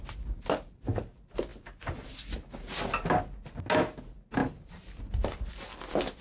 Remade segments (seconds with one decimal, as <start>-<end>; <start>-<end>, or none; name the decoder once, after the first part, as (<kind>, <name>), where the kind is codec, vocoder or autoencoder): none